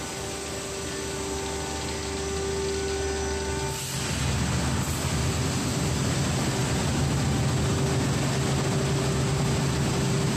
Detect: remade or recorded recorded